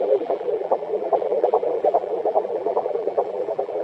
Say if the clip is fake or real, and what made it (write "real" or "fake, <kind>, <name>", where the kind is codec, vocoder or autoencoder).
fake, vocoder, BigVGAN v2